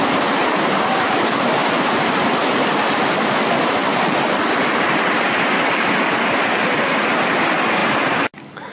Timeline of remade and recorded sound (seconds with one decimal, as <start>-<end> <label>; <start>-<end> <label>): 0.0-3.9 recorded; 3.9-6.1 remade; 6.1-8.7 recorded